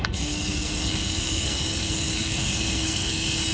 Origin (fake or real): fake